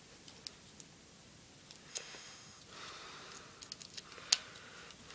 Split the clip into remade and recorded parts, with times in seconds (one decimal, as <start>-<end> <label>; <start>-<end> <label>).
0.0-1.9 recorded; 1.9-2.6 remade; 2.6-5.1 recorded